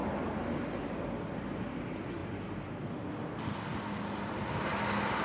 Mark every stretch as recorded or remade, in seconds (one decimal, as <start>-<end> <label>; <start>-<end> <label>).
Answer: 0.0-5.2 recorded